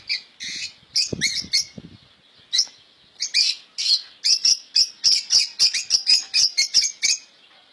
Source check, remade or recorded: recorded